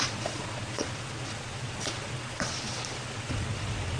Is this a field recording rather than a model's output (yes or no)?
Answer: no